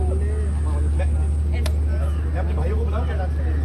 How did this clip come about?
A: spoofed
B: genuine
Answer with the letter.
B